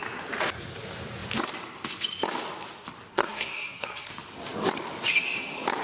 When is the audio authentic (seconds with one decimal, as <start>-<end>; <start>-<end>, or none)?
0.0-3.1; 4.1-5.8